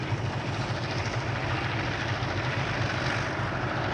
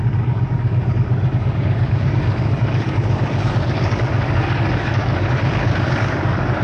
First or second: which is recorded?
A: first